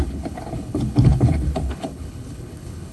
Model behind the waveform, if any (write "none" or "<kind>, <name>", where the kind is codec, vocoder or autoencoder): codec, HILCodec